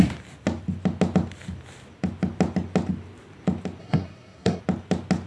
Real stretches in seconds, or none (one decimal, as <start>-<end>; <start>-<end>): 0.0-3.8; 4.6-5.3

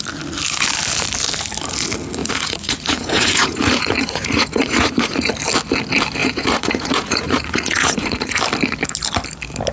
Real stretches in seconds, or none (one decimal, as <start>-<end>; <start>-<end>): 0.0-2.2; 5.3-6.2; 8.4-9.7